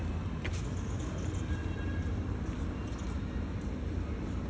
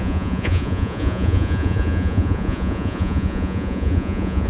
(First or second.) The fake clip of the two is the second